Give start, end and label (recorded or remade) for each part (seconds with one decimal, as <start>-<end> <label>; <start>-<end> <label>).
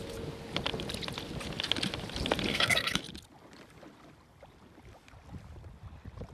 0.0-2.5 recorded; 2.5-3.0 remade; 3.0-6.3 recorded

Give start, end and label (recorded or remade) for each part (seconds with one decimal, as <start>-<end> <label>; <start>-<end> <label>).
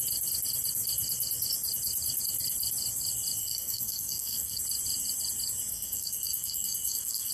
0.0-3.4 recorded; 3.4-4.6 remade; 4.6-5.7 recorded; 5.7-7.3 remade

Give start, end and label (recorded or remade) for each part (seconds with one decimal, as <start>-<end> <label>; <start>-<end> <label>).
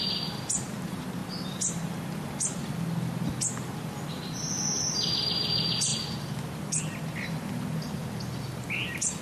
0.0-9.2 recorded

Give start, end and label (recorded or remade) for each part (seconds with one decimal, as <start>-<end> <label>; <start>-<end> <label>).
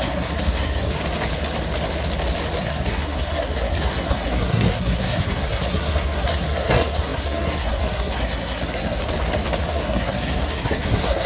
0.0-1.0 remade; 1.0-2.6 recorded; 2.6-9.0 remade; 9.0-9.7 recorded; 9.7-11.3 remade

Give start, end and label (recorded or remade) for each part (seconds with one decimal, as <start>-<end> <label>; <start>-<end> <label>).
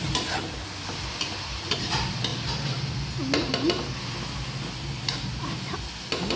0.0-6.4 recorded